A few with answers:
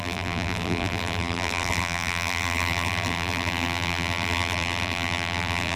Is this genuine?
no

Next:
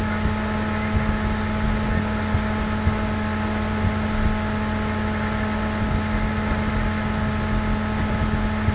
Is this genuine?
yes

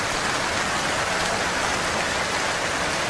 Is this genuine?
yes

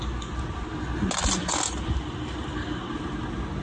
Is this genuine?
yes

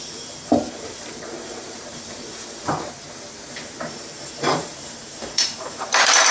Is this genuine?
no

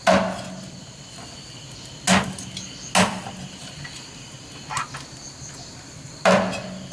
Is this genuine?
yes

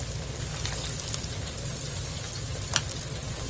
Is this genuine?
yes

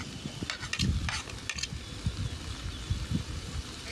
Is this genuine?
yes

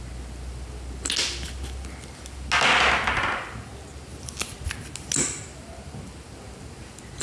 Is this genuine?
yes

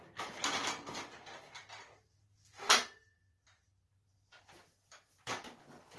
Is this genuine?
yes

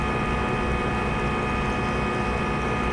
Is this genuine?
yes